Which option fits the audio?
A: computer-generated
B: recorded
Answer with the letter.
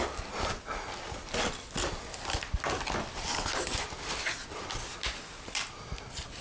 B